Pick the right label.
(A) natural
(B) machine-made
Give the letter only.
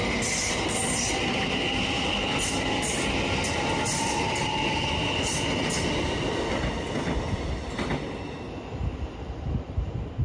A